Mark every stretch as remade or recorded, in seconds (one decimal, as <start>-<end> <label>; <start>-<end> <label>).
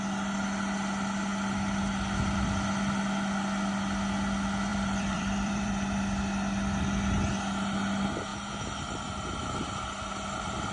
0.0-4.7 recorded; 4.7-5.7 remade; 5.7-10.7 recorded